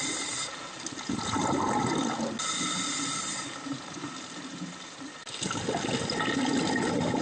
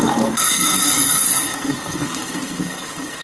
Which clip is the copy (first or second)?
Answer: second